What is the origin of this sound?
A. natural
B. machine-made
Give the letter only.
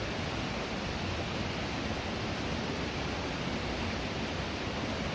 A